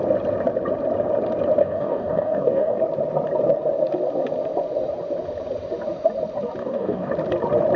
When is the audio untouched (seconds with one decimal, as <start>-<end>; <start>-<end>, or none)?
0.0-1.6; 2.8-6.6; 7.1-7.8